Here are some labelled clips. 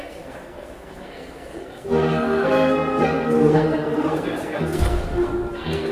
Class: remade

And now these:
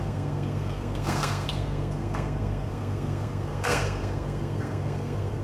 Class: remade